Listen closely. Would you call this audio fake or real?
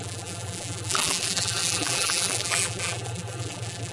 fake